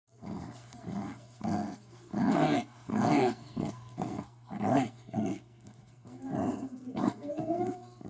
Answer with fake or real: fake